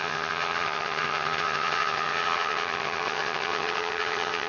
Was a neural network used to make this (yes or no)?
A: yes